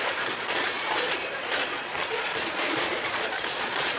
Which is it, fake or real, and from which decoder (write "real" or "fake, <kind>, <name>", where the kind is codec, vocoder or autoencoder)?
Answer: fake, vocoder, Vocos